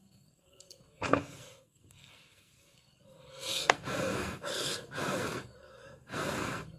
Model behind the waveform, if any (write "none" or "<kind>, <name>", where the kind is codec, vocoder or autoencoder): codec, SNAC